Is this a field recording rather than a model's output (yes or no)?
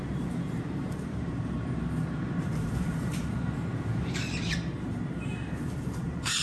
no